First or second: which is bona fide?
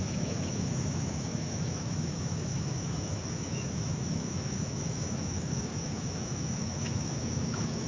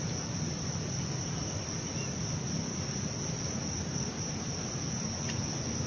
second